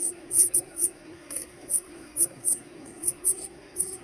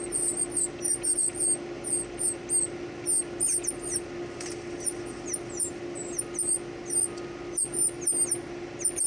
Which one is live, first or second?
second